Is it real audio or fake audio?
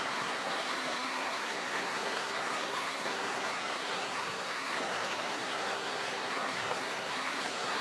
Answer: fake